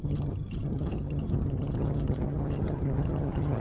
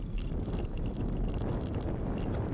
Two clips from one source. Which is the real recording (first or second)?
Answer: second